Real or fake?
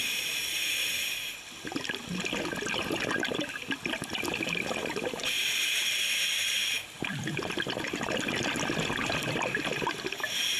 real